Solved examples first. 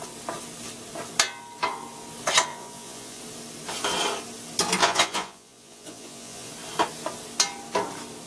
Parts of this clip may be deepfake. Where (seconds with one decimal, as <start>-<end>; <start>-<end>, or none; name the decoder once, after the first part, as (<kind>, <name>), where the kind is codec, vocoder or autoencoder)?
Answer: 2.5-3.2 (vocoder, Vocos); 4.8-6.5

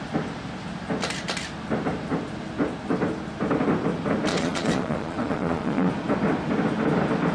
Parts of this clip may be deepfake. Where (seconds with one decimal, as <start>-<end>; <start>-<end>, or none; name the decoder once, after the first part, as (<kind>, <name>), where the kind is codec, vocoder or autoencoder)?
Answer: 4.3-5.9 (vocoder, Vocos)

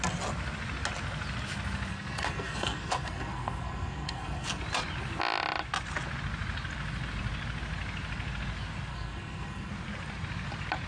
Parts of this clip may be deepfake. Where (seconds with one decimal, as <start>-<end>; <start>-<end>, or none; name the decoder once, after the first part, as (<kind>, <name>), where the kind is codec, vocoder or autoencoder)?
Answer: 1.9-4.6 (codec, SNAC); 8.9-9.7

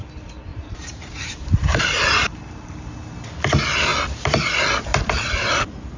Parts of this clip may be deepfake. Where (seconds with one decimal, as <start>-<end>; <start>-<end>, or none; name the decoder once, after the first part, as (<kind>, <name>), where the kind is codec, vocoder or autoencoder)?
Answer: 0.5-2.8 (vocoder, BigVGAN v2); 3.9-4.5; 4.9-5.5

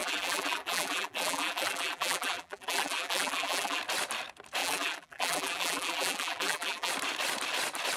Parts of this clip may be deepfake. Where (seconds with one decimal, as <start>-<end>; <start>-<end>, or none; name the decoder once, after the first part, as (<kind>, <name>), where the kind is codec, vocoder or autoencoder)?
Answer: 0.0-3.8 (vocoder, BigVGAN v2); 4.6-6.9